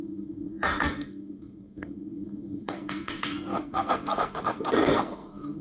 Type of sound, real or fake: fake